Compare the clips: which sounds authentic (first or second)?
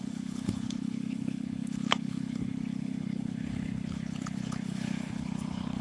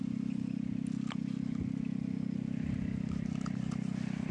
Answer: second